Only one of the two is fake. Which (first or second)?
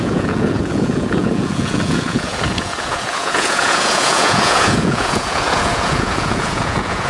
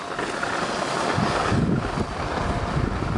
first